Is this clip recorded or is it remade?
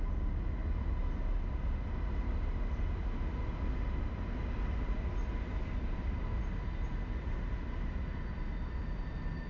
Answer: recorded